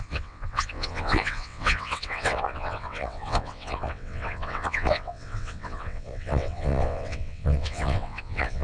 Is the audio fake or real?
fake